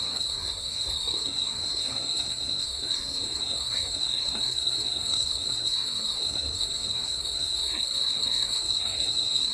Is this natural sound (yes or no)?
no